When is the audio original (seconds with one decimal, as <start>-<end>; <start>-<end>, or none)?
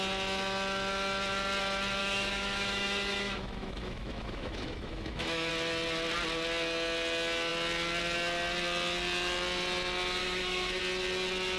0.0-2.0; 5.5-10.2; 10.8-11.6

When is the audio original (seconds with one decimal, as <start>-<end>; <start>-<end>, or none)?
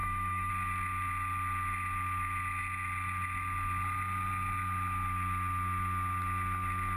0.5-7.0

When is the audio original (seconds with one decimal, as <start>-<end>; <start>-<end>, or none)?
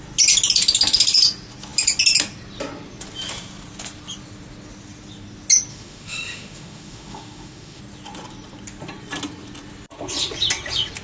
0.0-5.7; 7.8-11.0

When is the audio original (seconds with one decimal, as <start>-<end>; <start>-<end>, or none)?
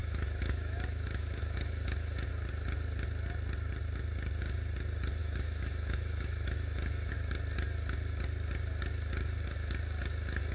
2.3-5.2; 7.1-10.5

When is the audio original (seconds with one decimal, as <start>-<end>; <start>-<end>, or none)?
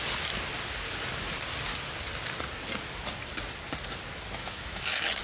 0.0-4.4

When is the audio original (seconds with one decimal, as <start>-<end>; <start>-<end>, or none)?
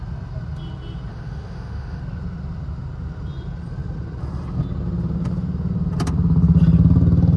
0.0-1.1; 2.0-7.4